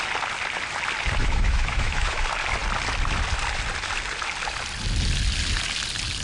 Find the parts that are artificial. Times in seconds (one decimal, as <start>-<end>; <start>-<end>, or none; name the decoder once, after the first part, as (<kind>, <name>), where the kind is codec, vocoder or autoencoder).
1.2-2.2 (autoencoder, DAC-VAE)